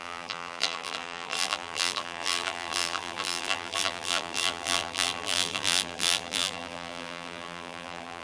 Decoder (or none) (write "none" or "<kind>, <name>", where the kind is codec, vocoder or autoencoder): vocoder, BigVGAN v2